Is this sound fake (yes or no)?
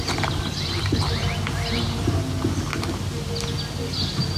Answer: no